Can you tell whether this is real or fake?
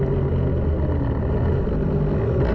real